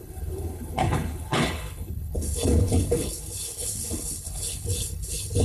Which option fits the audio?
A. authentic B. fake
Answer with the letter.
B